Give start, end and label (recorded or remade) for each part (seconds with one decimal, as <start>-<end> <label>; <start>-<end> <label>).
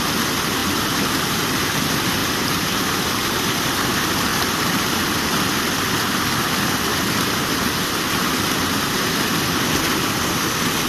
0.0-2.2 recorded; 2.2-2.8 remade; 2.8-4.3 recorded; 4.3-5.1 remade; 5.1-10.9 recorded